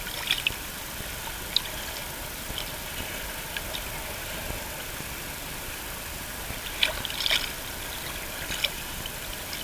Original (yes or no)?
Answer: yes